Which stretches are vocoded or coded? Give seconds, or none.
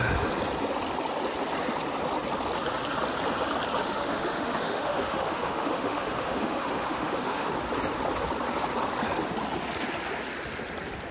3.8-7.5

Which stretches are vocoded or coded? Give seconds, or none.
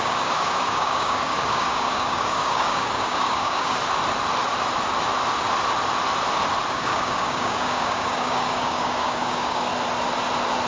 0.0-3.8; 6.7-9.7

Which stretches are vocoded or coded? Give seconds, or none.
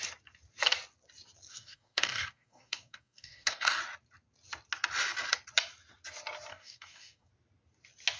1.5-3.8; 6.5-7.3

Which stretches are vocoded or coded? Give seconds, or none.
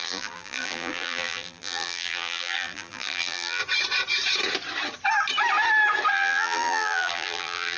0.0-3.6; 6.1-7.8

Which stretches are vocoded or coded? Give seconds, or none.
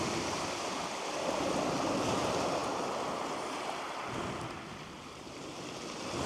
none